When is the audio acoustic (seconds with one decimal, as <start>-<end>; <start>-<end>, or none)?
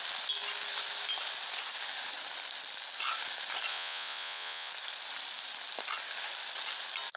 0.0-3.7; 4.7-7.2